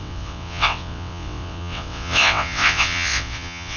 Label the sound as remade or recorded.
remade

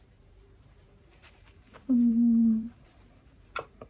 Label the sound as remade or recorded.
remade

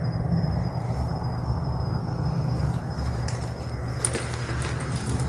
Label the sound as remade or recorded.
recorded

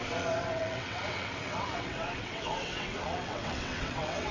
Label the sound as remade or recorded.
remade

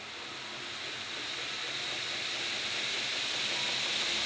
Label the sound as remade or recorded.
recorded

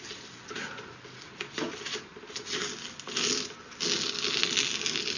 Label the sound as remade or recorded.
recorded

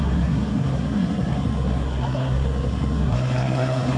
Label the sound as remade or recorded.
remade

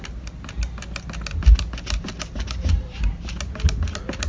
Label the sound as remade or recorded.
recorded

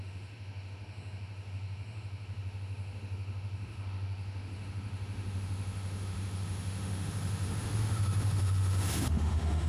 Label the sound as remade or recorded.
remade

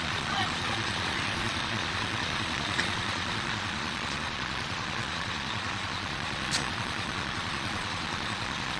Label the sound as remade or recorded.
remade